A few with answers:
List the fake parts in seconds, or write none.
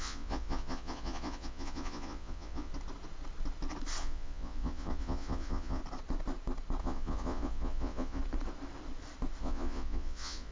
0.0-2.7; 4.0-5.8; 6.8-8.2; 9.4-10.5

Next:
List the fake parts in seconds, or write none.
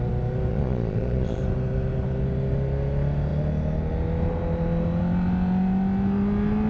0.5-1.4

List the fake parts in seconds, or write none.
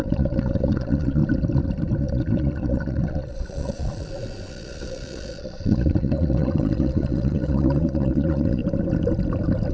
0.0-1.2; 2.0-8.6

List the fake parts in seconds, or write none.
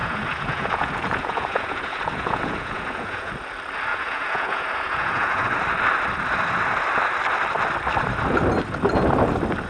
0.0-3.3; 3.9-5.6